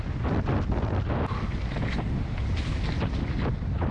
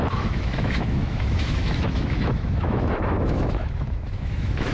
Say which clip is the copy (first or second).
second